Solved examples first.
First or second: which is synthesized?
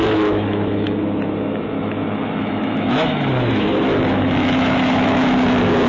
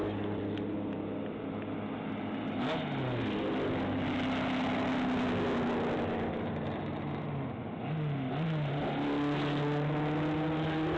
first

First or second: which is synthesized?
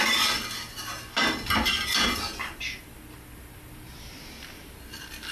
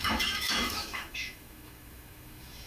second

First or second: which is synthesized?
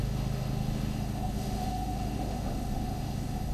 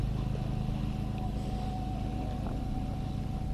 first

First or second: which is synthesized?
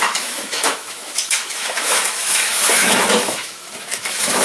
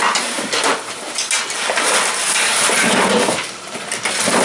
first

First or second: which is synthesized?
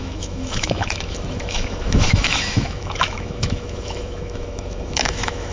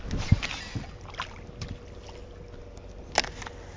first